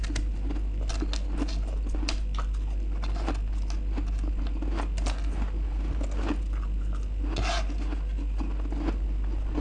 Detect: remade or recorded recorded